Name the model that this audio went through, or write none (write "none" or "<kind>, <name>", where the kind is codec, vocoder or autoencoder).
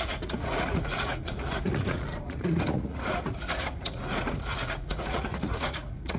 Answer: vocoder, Vocos